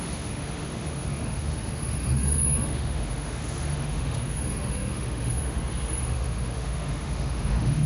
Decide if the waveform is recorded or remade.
remade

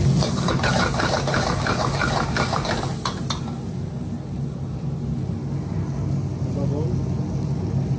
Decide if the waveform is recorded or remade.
recorded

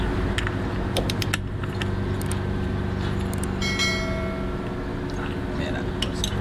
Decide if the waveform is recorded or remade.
recorded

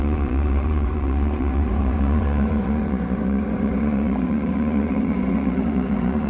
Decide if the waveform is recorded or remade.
remade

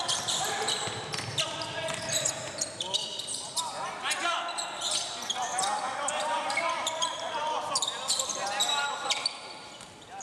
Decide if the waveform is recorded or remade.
remade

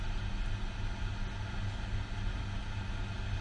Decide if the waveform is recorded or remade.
recorded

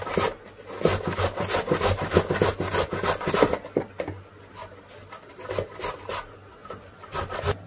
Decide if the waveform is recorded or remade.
recorded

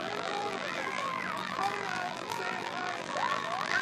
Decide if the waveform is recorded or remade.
remade